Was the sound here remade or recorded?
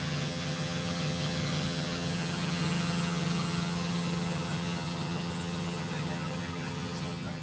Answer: remade